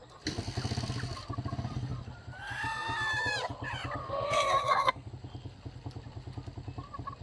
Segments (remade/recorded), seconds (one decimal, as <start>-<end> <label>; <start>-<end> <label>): 0.0-4.0 recorded; 4.0-5.1 remade; 5.1-7.2 recorded